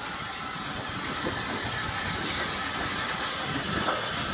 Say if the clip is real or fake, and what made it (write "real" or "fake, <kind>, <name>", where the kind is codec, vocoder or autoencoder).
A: real